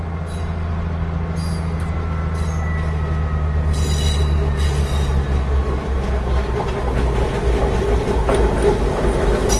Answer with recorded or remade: recorded